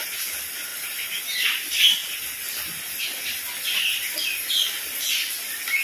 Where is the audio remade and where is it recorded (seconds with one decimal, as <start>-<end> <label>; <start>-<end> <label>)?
0.0-5.8 recorded